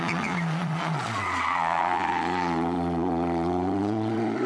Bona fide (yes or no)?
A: no